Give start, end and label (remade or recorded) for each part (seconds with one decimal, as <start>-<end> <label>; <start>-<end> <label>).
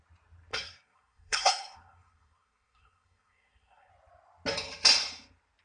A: 0.0-0.5 recorded; 0.5-3.9 remade; 3.9-5.6 recorded